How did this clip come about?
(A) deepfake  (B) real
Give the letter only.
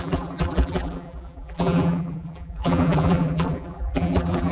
A